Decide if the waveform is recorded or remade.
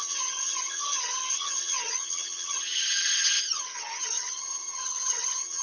remade